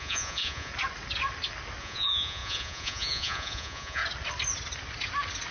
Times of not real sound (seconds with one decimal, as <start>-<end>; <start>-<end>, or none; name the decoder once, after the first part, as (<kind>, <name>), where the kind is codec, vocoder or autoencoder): 0.0-0.7 (vocoder, Vocos); 1.8-4.0